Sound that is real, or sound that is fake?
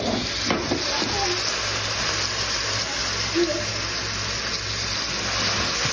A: real